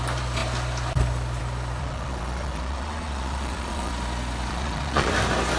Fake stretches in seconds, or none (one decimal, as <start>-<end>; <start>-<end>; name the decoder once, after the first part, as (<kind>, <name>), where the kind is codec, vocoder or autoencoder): 1.8-3.9 (vocoder, Vocos); 4.5-5.1